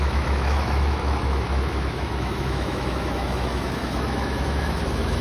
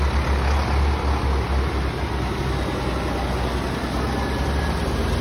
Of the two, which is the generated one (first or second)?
first